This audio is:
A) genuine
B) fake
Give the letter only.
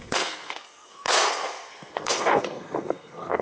B